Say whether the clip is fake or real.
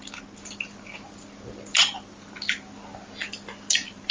real